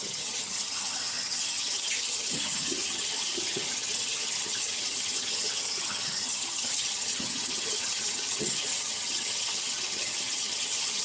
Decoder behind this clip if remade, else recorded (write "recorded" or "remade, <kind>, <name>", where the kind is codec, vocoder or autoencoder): remade, vocoder, HiFi-GAN